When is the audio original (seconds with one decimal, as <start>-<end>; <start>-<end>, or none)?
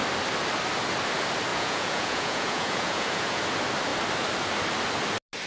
0.0-1.5; 3.4-5.5